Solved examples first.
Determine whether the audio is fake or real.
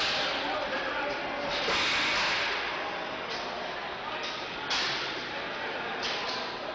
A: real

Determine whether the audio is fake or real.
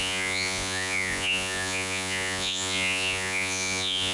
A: fake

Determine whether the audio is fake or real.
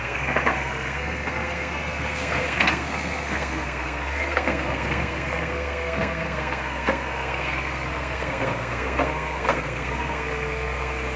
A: fake